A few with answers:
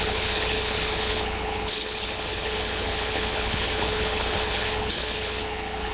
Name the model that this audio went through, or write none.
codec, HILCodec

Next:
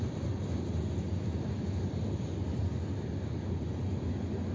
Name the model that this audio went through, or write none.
none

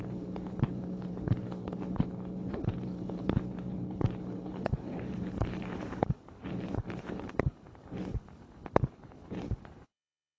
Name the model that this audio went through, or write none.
codec, HILCodec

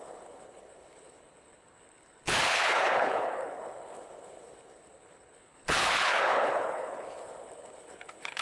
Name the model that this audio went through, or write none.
codec, HILCodec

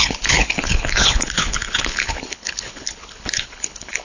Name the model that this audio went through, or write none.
codec, HILCodec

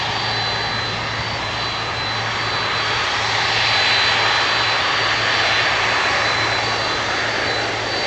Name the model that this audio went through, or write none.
none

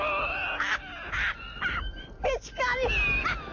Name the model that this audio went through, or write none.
none